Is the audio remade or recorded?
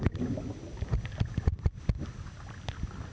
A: recorded